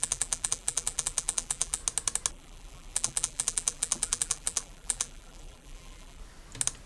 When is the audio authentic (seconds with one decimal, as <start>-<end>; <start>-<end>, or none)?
1.8-2.3; 6.2-6.9